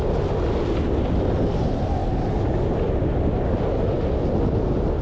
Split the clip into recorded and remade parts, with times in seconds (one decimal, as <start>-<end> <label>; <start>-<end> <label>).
0.0-5.0 recorded